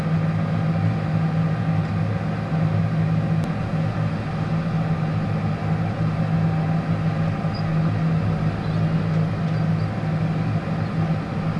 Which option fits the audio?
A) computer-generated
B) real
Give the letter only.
B